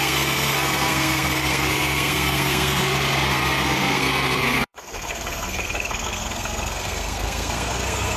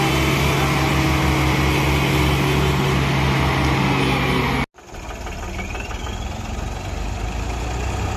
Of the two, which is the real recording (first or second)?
second